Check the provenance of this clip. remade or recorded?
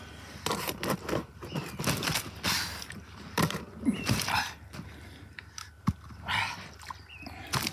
recorded